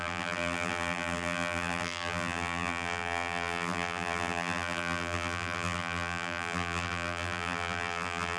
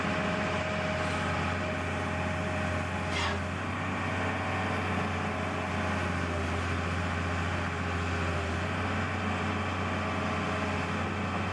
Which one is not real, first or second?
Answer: first